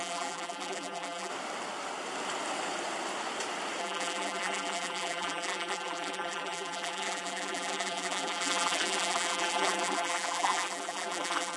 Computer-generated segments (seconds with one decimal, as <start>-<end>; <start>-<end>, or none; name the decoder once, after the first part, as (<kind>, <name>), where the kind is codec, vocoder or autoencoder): 0.0-1.3 (vocoder, BigVGAN v2); 3.8-11.6